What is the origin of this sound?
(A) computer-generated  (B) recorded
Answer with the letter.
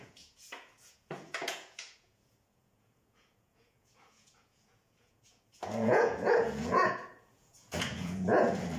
A